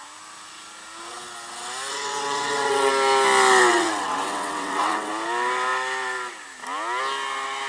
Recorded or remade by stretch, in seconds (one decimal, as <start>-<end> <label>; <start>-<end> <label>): 0.0-1.9 recorded; 1.9-2.9 remade; 2.9-3.7 recorded; 3.7-5.1 remade; 5.1-7.7 recorded